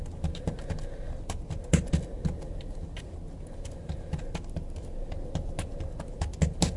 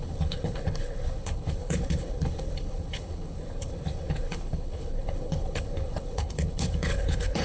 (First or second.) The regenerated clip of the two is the second